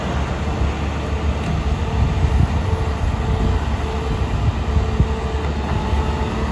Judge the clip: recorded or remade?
recorded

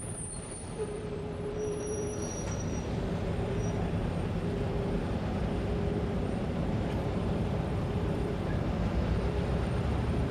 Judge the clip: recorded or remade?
remade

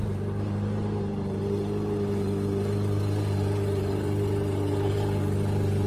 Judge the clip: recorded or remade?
remade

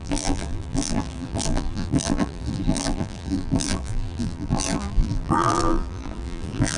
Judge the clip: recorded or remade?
remade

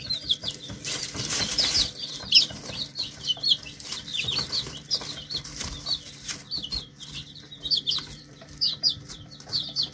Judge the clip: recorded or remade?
remade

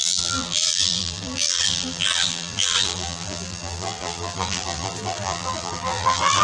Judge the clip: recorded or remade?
remade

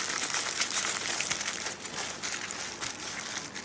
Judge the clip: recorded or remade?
recorded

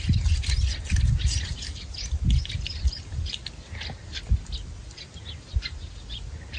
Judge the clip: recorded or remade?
recorded